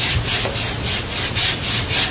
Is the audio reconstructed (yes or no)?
no